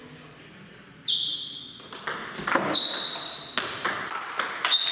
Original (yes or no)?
yes